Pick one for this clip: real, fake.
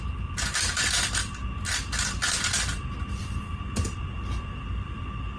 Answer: real